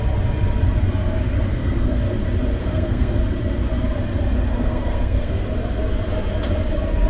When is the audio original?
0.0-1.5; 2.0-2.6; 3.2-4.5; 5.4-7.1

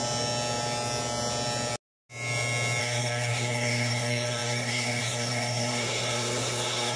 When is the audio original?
0.0-2.8